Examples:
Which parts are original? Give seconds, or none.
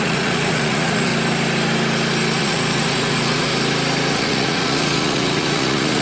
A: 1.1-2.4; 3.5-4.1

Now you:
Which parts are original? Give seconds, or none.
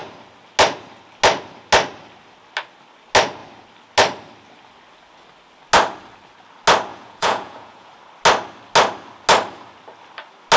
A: 0.0-6.9; 7.9-10.6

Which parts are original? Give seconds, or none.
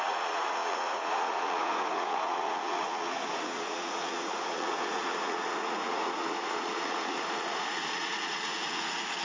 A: none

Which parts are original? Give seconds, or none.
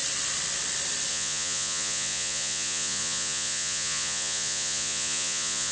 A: 0.0-1.1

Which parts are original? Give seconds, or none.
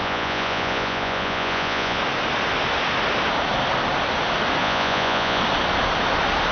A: 2.0-4.6; 5.4-6.5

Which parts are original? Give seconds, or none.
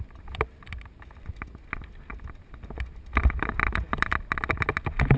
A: 0.0-5.2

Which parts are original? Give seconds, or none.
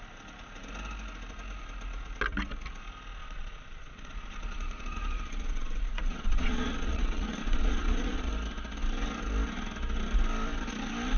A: 0.0-3.2; 8.3-11.2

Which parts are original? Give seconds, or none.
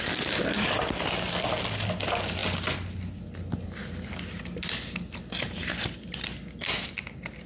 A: 0.0-7.5